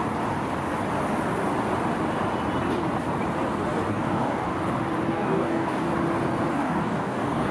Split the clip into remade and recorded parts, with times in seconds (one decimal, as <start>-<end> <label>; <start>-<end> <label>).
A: 0.0-3.9 recorded; 3.9-4.5 remade; 4.5-5.1 recorded; 5.1-5.9 remade; 5.9-6.5 recorded; 6.5-7.5 remade